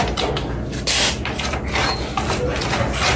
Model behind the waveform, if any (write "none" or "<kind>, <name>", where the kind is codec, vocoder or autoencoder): none